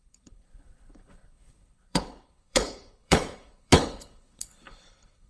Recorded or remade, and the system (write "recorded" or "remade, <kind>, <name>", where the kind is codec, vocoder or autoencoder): remade, codec, HILCodec